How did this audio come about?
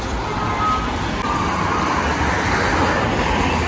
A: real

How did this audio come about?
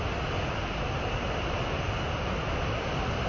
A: real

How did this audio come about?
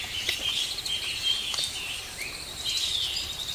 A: real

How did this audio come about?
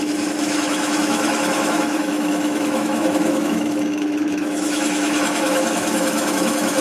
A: fake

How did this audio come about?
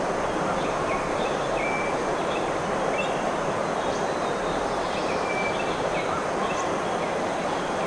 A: real